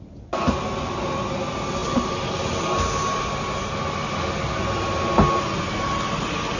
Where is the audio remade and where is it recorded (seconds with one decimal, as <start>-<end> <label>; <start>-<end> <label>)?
0.0-6.6 recorded